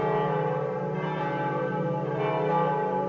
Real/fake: real